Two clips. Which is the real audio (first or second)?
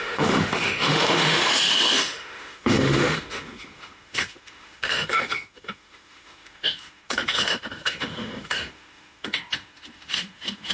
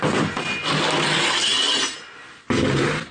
second